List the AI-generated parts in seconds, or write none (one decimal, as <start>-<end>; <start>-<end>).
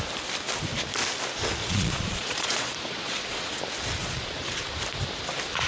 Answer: 1.6-3.6; 4.0-4.7